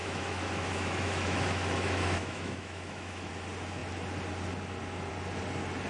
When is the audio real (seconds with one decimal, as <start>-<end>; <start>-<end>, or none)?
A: 3.3-5.9